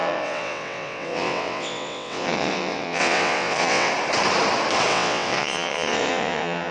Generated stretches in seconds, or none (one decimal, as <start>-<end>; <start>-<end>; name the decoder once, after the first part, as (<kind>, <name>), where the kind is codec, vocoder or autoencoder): 0.0-3.9 (vocoder, WaveNeXt); 4.9-6.7